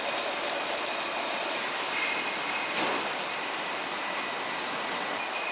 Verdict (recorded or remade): recorded